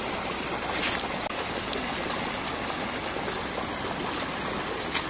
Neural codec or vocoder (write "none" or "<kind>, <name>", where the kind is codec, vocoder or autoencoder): none